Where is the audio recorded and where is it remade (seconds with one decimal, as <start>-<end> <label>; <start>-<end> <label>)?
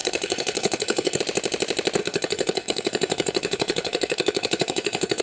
0.0-1.2 remade; 1.2-2.0 recorded; 2.0-5.2 remade